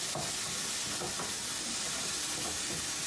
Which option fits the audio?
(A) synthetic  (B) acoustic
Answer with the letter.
B